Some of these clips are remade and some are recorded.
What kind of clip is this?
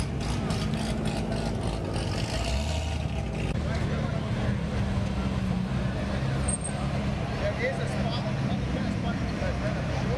recorded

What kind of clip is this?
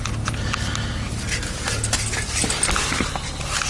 recorded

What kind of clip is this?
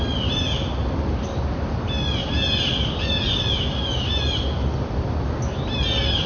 recorded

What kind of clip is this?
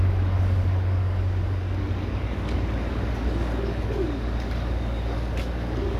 remade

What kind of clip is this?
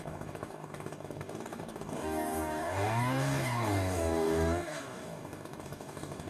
remade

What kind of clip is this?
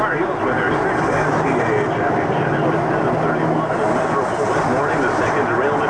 recorded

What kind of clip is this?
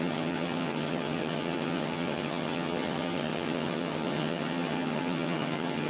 remade